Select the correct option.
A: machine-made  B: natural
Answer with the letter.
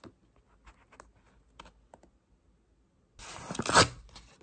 B